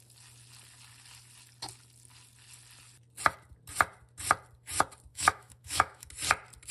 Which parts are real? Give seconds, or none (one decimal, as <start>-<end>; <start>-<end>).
0.0-5.1; 6.1-6.7